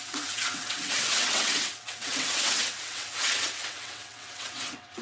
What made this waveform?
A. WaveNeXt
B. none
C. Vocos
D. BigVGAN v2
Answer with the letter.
A